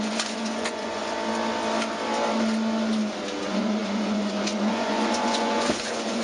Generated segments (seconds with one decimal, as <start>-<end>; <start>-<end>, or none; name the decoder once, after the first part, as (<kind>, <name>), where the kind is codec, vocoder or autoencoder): 0.0-1.0 (vocoder, Vocos); 3.4-6.2